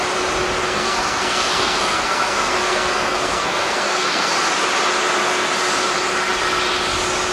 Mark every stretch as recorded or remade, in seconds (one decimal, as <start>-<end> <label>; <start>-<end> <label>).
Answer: 0.0-0.6 recorded; 0.6-4.3 remade; 4.3-7.3 recorded